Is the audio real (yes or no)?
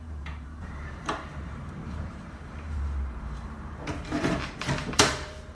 no